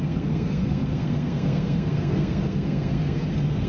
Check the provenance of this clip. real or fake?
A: fake